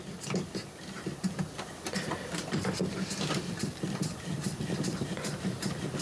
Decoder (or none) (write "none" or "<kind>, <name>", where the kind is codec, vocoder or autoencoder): none